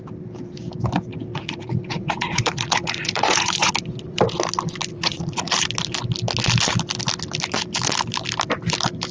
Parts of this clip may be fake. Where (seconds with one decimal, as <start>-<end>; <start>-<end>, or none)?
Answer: 1.3-3.7; 4.9-5.5